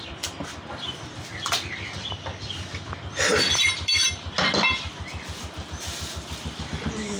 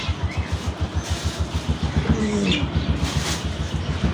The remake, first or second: first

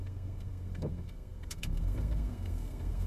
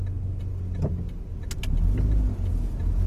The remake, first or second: first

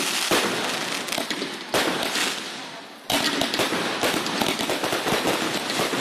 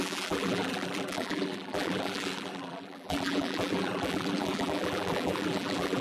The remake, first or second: second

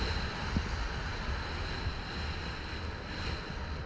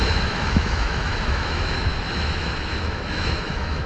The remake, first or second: second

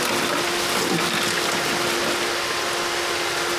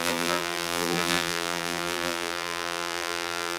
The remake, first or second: second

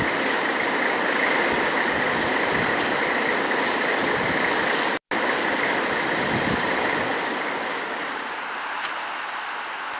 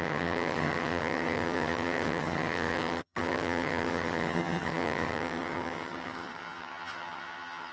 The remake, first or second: second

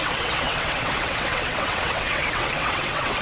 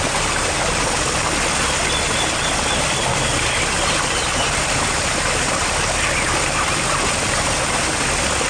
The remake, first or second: first